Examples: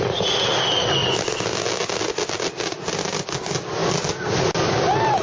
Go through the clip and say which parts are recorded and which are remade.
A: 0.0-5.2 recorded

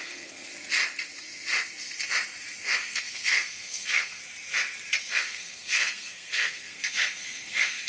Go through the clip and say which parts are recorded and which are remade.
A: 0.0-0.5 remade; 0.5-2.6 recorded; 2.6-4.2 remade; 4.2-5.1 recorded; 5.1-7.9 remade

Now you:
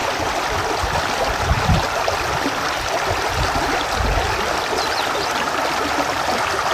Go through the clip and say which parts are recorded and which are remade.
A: 0.0-6.7 recorded

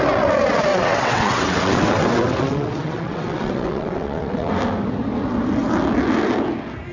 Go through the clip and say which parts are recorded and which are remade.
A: 0.0-0.7 recorded; 0.7-4.5 remade; 4.5-6.9 recorded

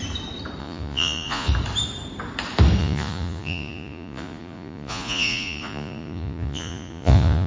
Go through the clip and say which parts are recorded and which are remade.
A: 0.0-0.6 recorded; 0.6-1.5 remade; 1.5-2.8 recorded; 2.8-7.5 remade

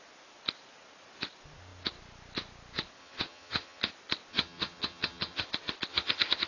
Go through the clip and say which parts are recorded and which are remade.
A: 0.0-3.0 recorded; 3.0-3.8 remade; 3.8-4.3 recorded; 4.3-5.5 remade; 5.5-5.9 recorded; 5.9-6.5 remade

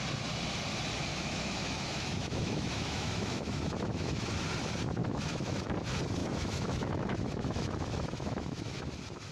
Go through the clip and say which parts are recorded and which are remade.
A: 0.0-1.1 recorded; 1.1-4.3 remade; 4.3-5.0 recorded; 5.0-5.7 remade; 5.7-6.2 recorded; 6.2-8.9 remade; 8.9-9.3 recorded

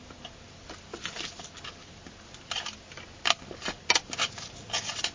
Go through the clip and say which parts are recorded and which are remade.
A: 0.0-5.1 recorded